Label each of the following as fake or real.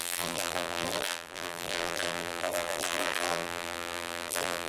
fake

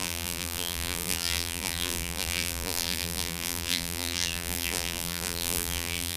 fake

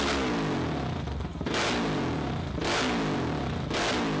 real